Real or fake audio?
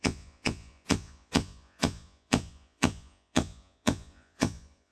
fake